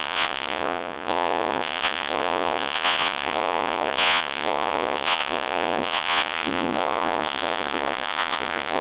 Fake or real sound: fake